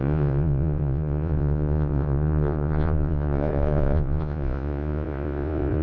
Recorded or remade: remade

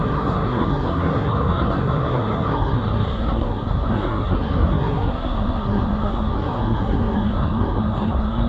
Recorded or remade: remade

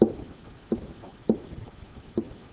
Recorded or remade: recorded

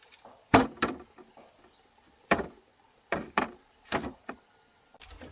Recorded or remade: remade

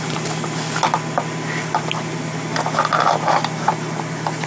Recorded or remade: recorded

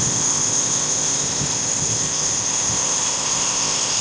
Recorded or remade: remade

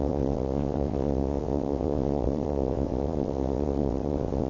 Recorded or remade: remade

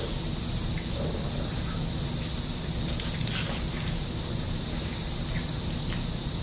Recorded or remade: recorded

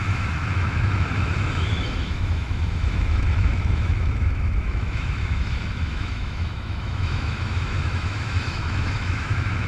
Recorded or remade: remade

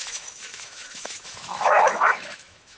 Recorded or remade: remade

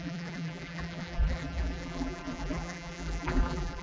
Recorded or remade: remade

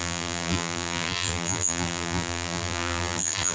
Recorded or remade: remade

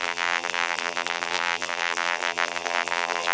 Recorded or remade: remade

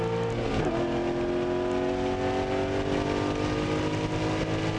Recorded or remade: recorded